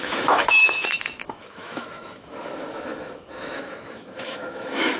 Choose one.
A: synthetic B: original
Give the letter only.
A